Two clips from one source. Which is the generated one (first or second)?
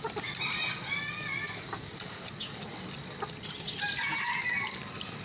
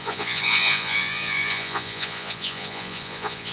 second